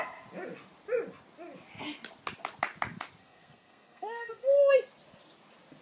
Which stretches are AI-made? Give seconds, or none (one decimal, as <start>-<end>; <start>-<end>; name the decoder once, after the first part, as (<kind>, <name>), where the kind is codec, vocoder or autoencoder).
3.2-4.7 (codec, SNAC)